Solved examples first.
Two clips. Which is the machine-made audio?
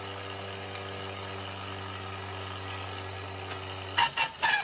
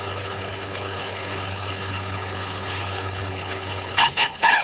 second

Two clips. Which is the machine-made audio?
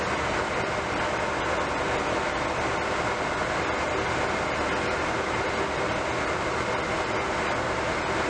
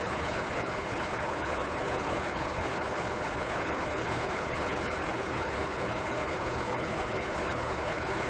second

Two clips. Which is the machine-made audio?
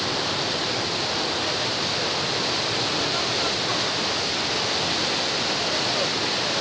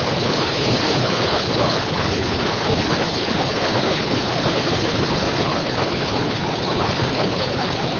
second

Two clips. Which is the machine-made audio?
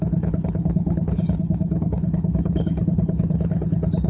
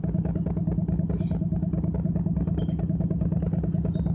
first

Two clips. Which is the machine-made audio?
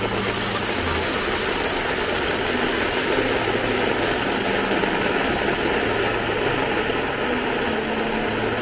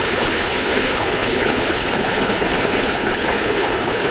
second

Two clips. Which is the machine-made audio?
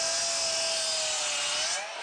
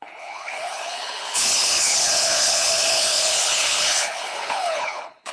second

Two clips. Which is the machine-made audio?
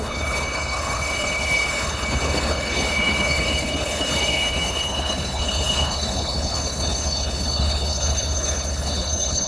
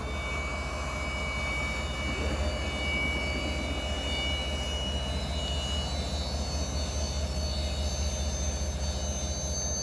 first